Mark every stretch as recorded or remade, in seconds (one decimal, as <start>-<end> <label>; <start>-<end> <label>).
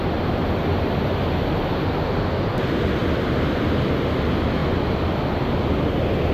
0.0-3.0 recorded; 3.0-3.5 remade; 3.5-6.3 recorded